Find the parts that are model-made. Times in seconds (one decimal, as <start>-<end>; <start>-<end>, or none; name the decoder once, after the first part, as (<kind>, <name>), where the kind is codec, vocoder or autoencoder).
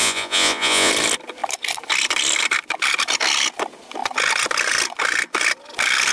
0.0-0.9 (vocoder, Vocos)